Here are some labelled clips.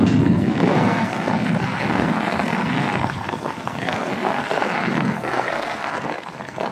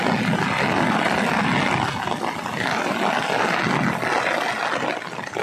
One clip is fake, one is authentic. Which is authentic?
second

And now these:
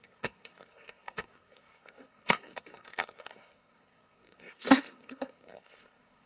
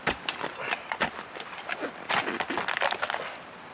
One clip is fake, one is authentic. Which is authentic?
second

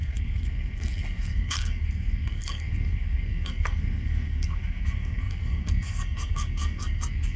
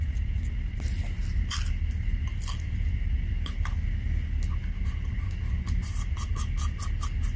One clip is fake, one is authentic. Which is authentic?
second